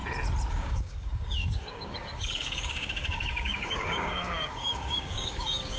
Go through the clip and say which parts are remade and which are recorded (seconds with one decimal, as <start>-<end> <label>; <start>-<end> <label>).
0.0-0.5 recorded; 0.5-5.8 remade